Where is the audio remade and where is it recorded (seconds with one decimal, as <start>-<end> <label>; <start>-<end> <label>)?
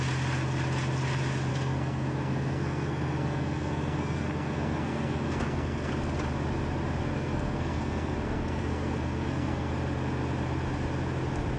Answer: 0.0-1.5 recorded; 1.5-5.9 remade; 5.9-7.0 recorded; 7.0-9.7 remade; 9.7-11.6 recorded